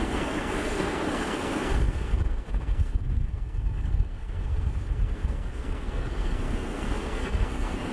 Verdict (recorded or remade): remade